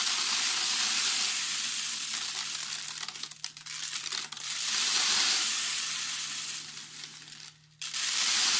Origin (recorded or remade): remade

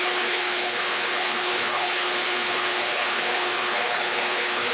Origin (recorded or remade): remade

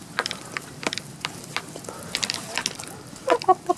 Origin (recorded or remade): recorded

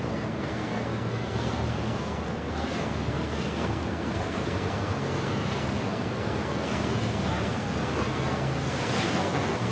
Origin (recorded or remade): remade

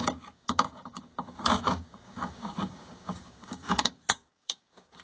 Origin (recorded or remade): remade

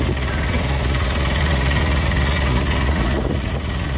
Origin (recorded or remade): remade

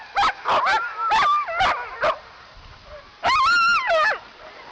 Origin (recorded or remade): recorded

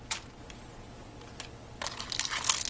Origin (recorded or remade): recorded